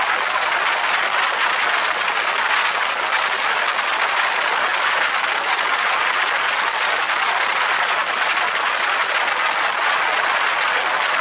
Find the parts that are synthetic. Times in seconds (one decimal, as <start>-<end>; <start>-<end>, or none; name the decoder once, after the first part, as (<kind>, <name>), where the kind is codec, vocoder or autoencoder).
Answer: none